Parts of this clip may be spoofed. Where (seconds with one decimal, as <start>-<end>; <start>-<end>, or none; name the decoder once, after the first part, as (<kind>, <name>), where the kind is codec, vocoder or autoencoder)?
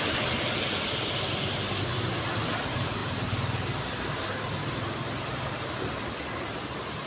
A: none